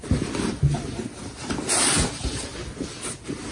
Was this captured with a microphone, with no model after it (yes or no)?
yes